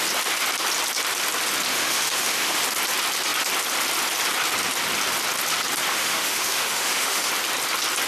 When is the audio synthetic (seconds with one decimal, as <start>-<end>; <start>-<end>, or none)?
1.7-2.6; 5.9-7.3

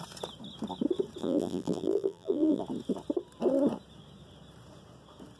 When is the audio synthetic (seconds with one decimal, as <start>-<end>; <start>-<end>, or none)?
1.2-2.6

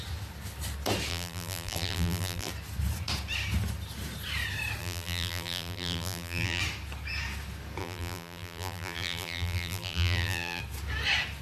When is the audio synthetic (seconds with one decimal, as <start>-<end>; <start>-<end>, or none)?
1.1-2.5; 4.8-6.6; 7.8-10.6